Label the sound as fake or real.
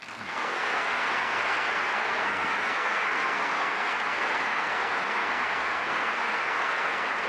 fake